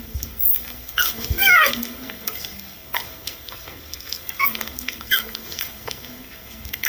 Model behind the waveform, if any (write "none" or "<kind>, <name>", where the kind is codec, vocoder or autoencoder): codec, SNAC